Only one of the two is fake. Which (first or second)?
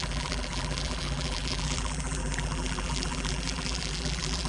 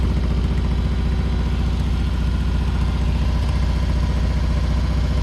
first